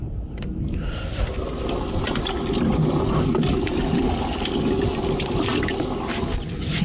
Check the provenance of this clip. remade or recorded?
recorded